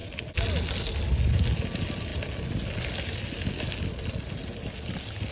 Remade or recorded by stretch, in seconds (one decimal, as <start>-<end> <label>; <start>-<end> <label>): 0.0-5.3 recorded